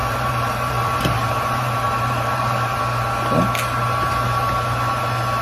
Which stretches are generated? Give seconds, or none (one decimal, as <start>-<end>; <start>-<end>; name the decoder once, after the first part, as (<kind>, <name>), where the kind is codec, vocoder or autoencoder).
0.0-2.8 (vocoder, BigVGAN v2)